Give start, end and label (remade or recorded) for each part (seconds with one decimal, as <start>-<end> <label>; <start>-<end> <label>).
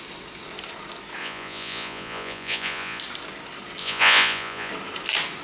0.0-1.2 recorded; 1.2-3.0 remade; 3.0-3.8 recorded; 3.8-4.7 remade; 4.7-5.4 recorded